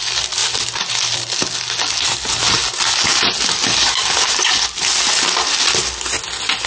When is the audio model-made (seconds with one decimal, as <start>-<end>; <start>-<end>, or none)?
none